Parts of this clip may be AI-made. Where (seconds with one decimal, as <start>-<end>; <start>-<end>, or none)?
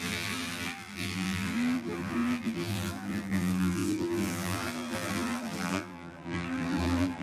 0.0-7.2